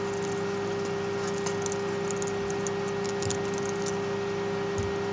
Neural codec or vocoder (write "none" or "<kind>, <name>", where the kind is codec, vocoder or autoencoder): none